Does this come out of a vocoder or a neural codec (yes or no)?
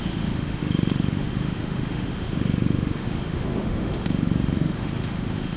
yes